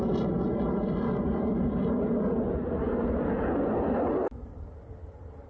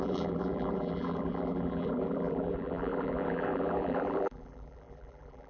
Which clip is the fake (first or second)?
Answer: second